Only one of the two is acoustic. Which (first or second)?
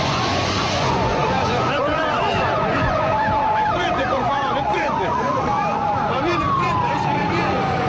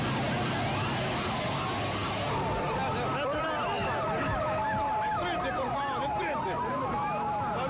second